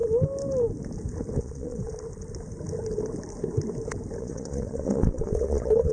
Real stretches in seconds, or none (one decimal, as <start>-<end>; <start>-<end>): 0.0-1.4; 1.9-4.2